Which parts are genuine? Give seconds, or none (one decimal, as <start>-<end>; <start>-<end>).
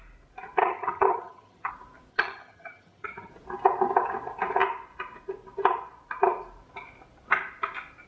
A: 0.0-0.6; 1.7-2.1; 3.3-8.1